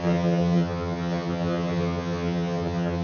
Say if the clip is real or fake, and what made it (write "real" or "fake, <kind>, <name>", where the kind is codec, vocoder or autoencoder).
fake, vocoder, HiFi-GAN